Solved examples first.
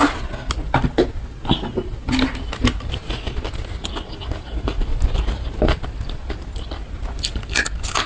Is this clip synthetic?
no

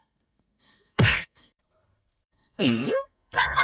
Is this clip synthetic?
yes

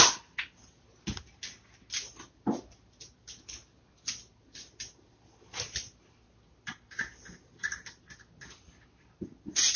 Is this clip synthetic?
no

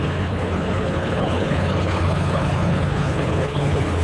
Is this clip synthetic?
yes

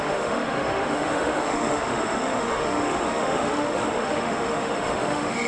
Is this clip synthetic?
yes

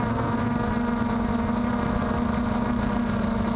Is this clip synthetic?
no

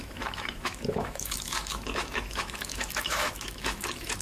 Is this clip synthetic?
yes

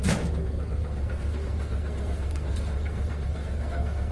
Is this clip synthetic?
yes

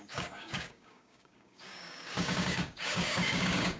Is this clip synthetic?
yes